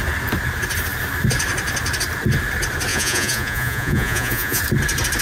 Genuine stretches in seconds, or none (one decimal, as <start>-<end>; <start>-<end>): 0.0-2.9; 4.6-5.2